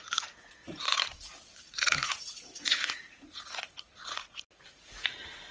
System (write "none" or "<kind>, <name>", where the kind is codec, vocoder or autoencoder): vocoder, Vocos